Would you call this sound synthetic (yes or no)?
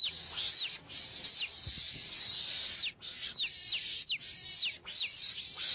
no